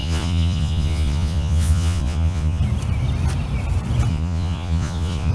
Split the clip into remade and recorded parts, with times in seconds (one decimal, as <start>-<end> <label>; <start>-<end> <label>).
0.0-2.6 remade; 2.6-4.1 recorded; 4.1-5.3 remade